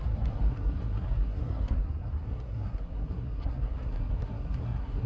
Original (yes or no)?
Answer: no